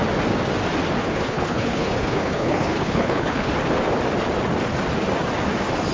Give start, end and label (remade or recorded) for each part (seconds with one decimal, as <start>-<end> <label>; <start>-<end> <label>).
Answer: 0.0-1.0 recorded; 1.0-3.5 remade; 3.5-5.9 recorded